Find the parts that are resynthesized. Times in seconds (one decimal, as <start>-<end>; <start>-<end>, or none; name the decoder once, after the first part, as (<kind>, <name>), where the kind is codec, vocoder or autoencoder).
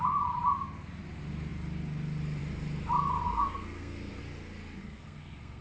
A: 3.2-4.2 (codec, SNAC); 4.8-5.6